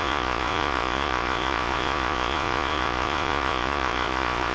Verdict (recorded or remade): remade